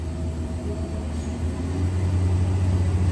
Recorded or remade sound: recorded